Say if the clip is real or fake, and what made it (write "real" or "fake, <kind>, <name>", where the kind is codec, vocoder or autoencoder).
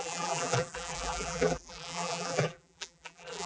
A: fake, vocoder, BigVGAN v2